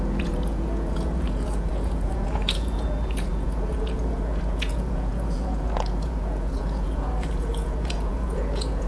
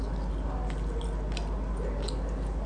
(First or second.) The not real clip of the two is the first